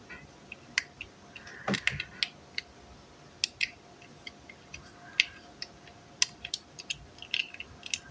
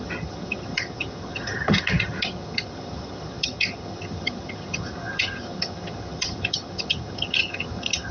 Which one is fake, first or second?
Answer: second